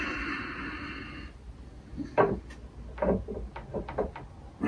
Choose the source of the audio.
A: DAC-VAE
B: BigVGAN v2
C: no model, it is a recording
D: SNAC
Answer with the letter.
C